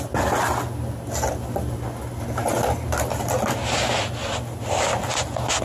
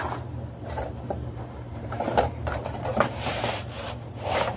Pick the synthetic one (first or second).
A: second